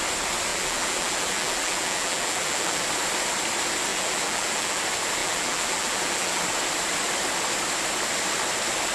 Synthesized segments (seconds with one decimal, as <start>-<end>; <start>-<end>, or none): 0.5-2.8; 3.9-4.8; 5.2-6.4